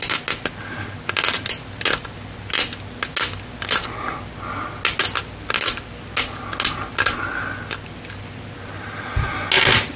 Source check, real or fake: real